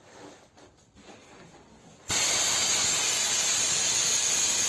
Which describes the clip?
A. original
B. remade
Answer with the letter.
A